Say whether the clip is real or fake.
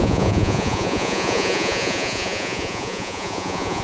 fake